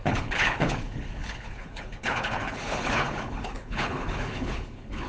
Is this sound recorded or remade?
remade